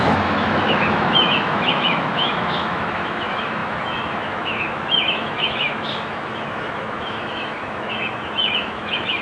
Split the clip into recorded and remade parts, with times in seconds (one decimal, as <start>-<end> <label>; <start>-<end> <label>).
0.0-9.2 remade